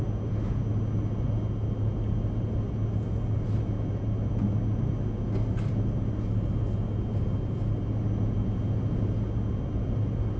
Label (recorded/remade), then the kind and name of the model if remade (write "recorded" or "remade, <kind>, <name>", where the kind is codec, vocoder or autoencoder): recorded